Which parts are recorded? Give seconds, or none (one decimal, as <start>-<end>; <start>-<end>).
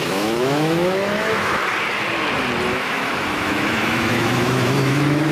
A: 1.6-2.7